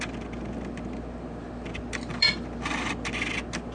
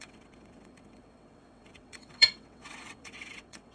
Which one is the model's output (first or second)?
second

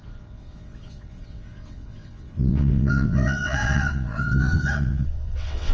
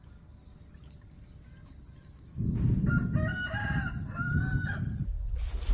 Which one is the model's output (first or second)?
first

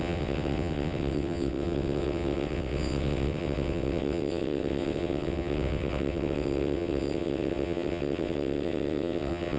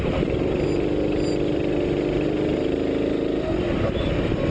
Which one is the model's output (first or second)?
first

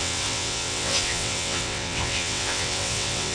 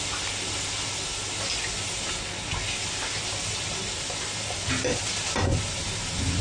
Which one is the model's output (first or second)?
first